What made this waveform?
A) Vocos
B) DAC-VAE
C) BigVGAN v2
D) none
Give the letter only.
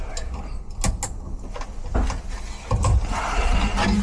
D